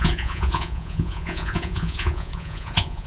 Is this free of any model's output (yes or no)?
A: no